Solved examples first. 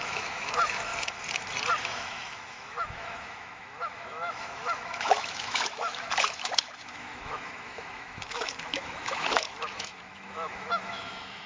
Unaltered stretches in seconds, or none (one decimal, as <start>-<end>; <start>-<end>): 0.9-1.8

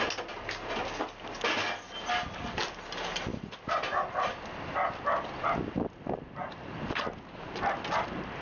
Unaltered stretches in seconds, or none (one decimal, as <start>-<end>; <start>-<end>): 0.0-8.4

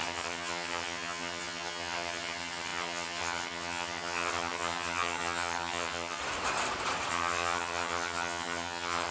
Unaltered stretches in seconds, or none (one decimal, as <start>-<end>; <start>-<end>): 6.2-7.1